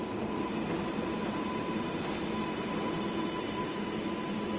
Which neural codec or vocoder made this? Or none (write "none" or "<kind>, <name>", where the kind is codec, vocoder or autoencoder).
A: none